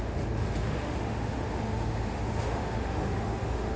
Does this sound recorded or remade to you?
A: remade